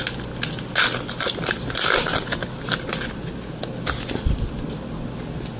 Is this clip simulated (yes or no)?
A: no